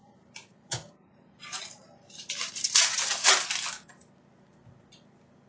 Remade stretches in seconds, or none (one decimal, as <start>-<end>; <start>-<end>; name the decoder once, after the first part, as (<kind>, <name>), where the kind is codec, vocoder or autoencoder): 0.0-3.3 (vocoder, BigVGAN v2)